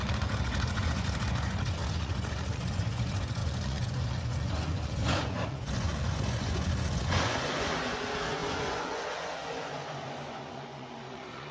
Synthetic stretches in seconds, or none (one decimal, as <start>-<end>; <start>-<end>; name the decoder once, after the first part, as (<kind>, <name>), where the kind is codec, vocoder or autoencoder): 0.0-11.5 (vocoder, Vocos)